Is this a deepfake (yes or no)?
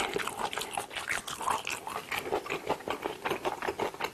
yes